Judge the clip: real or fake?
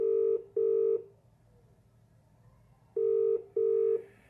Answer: real